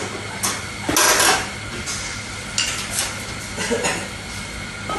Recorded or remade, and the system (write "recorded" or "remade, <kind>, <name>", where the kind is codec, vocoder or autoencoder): recorded